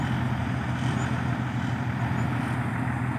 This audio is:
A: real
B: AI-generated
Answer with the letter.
A